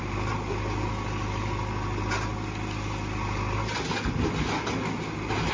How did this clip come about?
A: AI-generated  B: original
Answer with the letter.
B